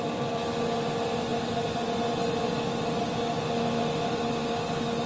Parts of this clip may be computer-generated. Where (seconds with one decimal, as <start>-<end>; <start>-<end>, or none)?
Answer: none